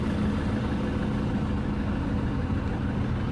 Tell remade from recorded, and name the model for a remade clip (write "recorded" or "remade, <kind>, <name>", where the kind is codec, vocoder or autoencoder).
recorded